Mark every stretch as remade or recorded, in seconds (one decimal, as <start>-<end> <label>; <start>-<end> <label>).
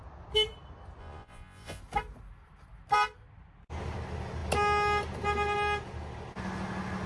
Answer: 0.0-1.0 recorded; 1.0-1.8 remade; 1.8-7.1 recorded